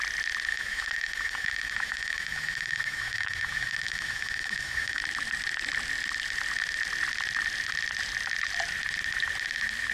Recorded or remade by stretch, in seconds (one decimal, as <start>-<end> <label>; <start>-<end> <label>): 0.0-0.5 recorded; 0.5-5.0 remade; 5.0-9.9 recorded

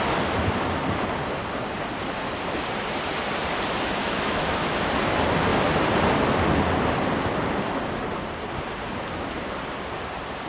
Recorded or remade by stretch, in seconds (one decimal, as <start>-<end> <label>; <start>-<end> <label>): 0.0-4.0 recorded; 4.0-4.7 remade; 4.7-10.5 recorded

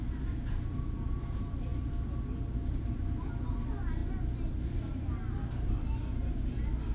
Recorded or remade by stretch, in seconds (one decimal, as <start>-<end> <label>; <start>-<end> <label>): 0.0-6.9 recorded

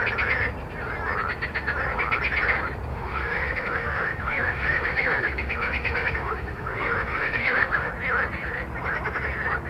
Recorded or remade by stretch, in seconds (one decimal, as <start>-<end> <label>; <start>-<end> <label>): 0.0-2.9 recorded; 2.9-7.9 remade; 7.9-9.7 recorded

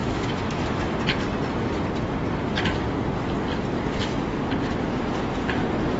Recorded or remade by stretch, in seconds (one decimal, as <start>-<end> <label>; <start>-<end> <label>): 0.0-0.8 remade; 0.8-6.0 recorded

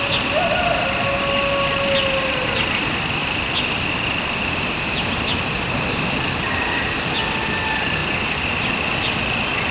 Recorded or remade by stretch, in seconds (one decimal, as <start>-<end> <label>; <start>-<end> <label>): 0.0-9.7 recorded

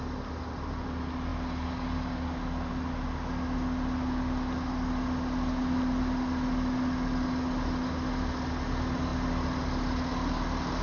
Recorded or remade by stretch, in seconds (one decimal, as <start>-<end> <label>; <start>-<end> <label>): 0.0-10.8 recorded